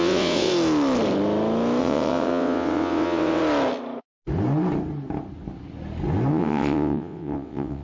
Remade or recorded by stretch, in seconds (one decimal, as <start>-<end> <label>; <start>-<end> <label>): 0.0-0.5 remade; 0.5-1.8 recorded; 1.8-3.4 remade; 3.4-6.3 recorded; 6.3-7.8 remade